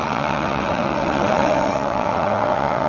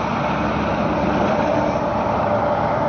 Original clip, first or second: second